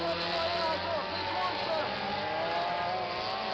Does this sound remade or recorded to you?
recorded